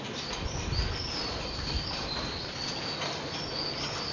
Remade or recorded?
recorded